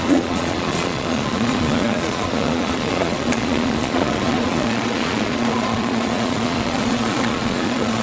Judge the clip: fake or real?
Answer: fake